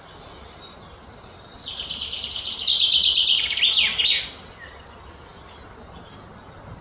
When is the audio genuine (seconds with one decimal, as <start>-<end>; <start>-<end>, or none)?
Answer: 0.0-6.8